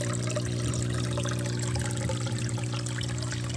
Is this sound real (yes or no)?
yes